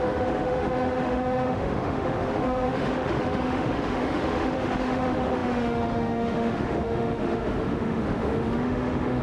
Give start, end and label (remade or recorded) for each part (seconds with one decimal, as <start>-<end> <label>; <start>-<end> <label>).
0.0-9.2 remade